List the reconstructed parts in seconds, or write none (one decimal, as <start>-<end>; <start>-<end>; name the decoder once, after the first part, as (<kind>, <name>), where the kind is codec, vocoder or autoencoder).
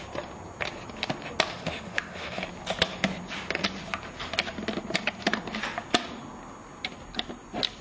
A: 1.5-2.4 (autoencoder, DAC-VAE)